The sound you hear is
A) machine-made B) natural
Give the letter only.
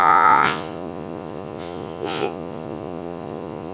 A